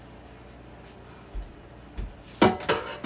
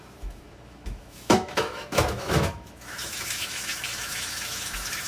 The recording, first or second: first